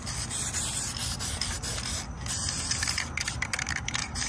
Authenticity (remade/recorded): recorded